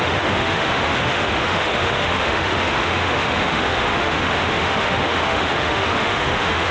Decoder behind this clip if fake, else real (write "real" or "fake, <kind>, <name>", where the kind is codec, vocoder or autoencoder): fake, autoencoder, DAC-VAE